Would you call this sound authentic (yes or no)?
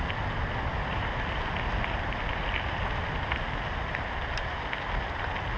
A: yes